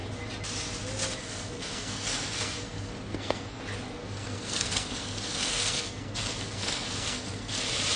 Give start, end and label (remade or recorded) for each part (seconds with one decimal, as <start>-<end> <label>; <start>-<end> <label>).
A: 0.0-1.2 recorded; 1.2-3.6 remade; 3.6-4.0 recorded; 4.0-7.6 remade; 7.6-8.0 recorded